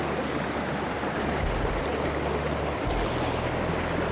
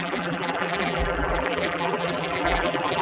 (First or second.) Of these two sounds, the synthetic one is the second